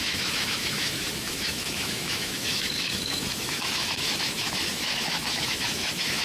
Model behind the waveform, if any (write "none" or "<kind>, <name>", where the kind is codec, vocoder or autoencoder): autoencoder, DAC-VAE